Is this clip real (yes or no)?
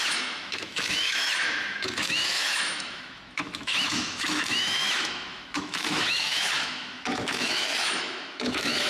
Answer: no